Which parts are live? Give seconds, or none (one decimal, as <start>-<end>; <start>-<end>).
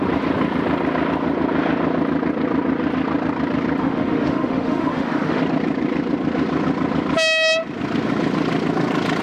0.0-3.8; 5.4-9.2